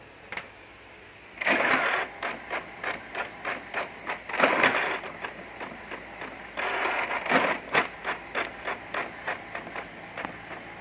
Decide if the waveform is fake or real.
real